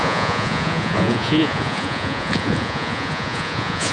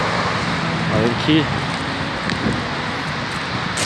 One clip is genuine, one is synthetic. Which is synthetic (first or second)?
first